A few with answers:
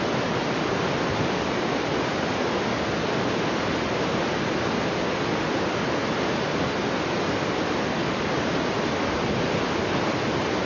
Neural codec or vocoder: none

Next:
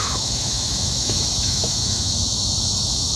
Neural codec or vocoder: autoencoder, DAC-VAE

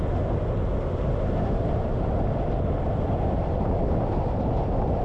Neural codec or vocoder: none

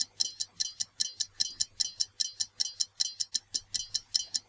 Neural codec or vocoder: none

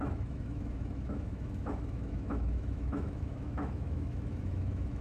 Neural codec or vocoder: autoencoder, DAC-VAE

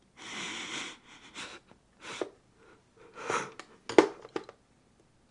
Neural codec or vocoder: none